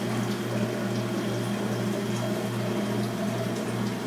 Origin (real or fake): real